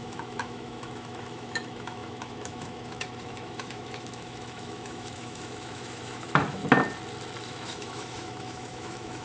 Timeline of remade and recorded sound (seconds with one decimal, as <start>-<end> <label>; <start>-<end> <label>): 0.0-6.6 remade; 6.6-7.4 recorded; 7.4-9.2 remade

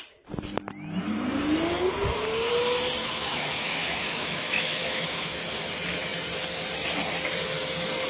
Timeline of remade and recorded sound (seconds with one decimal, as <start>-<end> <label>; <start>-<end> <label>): 0.0-3.0 recorded; 3.0-5.3 remade; 5.3-8.1 recorded

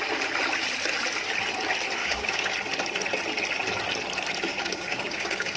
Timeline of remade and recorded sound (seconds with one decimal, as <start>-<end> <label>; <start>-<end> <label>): 0.0-2.0 recorded; 2.0-2.5 remade; 2.5-4.5 recorded; 4.5-5.6 remade

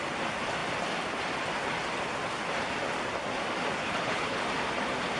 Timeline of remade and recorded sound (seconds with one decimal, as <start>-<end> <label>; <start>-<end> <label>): 0.0-3.8 recorded; 3.8-4.4 remade; 4.4-5.2 recorded

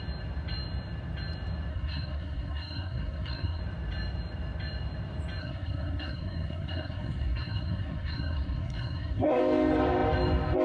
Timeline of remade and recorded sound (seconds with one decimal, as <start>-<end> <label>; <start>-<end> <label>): 0.0-1.7 recorded; 1.7-3.6 remade; 3.6-5.4 recorded; 5.4-9.4 remade; 9.4-10.6 recorded

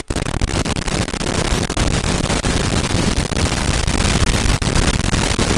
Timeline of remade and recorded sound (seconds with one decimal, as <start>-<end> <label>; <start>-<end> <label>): 0.0-0.5 recorded; 0.5-3.9 remade; 3.9-5.6 recorded

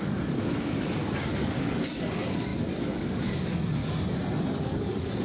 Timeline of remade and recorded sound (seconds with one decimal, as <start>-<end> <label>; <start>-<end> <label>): 0.0-3.8 remade; 3.8-4.6 recorded; 4.6-5.2 remade